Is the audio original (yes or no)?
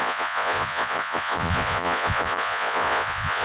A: no